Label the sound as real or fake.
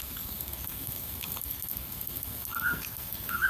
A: fake